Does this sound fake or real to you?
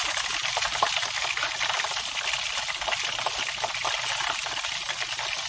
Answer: real